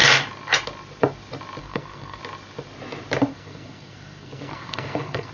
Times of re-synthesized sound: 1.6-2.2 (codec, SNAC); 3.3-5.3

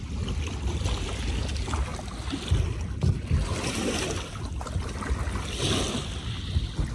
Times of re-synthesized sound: none